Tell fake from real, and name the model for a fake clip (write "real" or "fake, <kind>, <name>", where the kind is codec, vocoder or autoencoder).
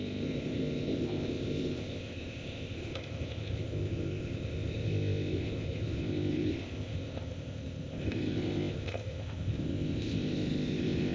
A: fake, codec, ZipCodec